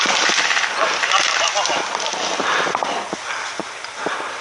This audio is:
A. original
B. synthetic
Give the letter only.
A